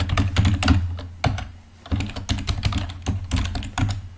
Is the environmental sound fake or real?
real